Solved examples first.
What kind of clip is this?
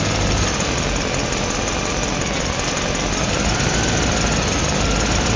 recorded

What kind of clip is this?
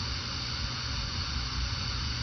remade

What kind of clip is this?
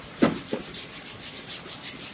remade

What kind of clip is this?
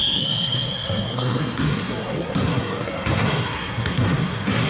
remade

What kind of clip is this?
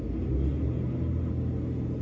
recorded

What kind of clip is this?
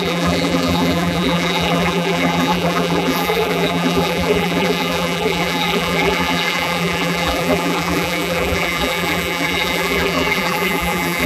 remade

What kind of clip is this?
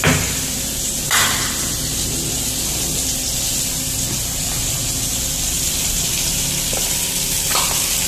recorded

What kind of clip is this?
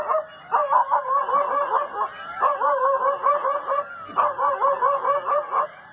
recorded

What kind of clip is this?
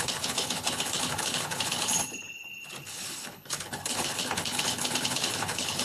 remade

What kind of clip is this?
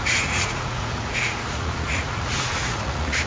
remade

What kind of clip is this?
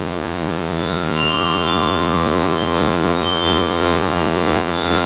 remade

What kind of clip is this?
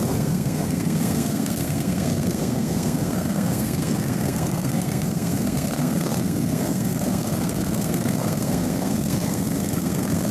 remade